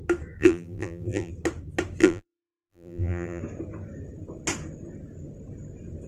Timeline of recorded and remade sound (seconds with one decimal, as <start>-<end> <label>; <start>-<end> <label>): 0.0-0.4 recorded; 0.4-1.3 remade; 1.3-2.0 recorded; 2.0-3.4 remade; 3.4-6.1 recorded